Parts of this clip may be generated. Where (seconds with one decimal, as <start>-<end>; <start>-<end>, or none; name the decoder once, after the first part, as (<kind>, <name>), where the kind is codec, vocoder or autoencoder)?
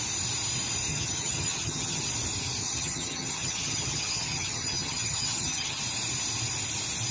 0.9-2.0 (vocoder, HiFi-GAN); 2.6-5.8